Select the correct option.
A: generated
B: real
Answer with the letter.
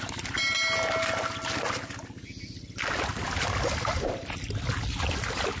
B